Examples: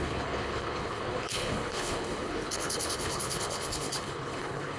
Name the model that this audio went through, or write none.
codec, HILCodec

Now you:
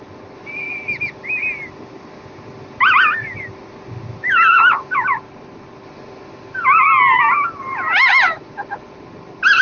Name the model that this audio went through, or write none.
none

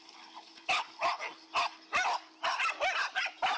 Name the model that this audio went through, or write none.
none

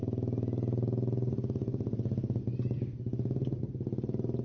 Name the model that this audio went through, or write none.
none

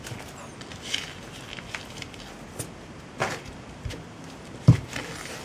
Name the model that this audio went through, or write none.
none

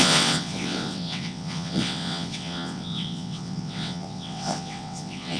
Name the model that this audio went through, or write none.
vocoder, WaveNeXt